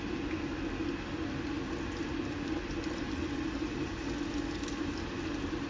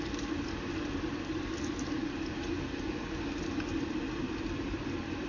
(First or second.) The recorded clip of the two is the first